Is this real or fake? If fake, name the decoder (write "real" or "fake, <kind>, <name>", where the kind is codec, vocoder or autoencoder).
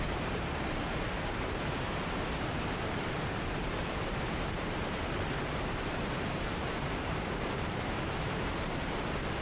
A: fake, vocoder, BigVGAN v2